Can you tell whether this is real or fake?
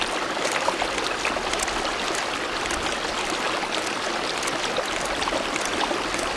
real